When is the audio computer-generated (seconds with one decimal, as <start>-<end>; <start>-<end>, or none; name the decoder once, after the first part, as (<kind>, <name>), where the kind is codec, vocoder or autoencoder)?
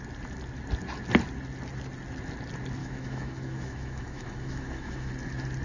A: 2.8-5.1 (autoencoder, DAC-VAE)